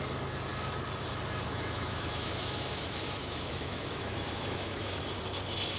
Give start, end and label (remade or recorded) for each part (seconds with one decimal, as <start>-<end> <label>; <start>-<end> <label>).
0.0-1.5 recorded; 1.5-5.0 remade; 5.0-5.8 recorded